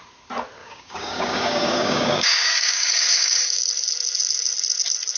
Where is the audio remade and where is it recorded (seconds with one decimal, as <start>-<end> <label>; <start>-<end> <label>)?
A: 0.0-0.6 recorded; 0.6-3.6 remade; 3.6-5.2 recorded